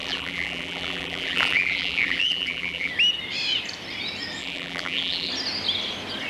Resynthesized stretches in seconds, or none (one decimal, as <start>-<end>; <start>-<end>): 0.0-2.9; 4.4-5.3